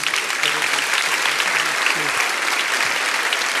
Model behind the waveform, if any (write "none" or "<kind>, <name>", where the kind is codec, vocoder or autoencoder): none